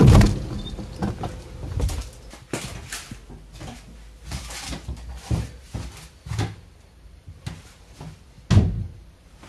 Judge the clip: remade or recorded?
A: recorded